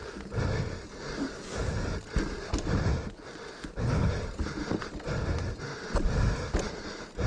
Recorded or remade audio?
recorded